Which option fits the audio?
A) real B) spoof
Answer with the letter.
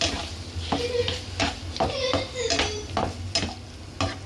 A